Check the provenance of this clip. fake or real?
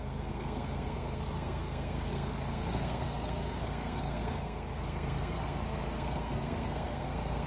fake